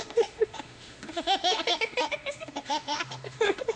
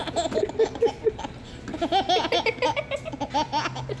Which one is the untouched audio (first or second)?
second